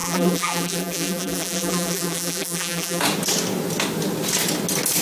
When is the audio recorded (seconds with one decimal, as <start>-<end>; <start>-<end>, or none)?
3.0-5.0